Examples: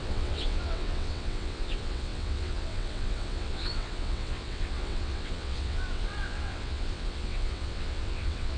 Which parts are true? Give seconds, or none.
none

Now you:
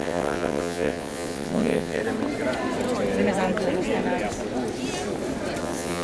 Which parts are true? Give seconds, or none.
2.0-5.6